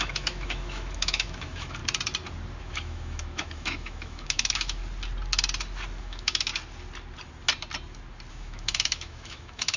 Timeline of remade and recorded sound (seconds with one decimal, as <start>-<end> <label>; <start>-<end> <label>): 0.0-1.8 remade; 1.8-2.6 recorded; 2.6-4.8 remade; 4.8-6.0 recorded; 6.0-6.5 remade; 6.5-8.3 recorded; 8.3-9.8 remade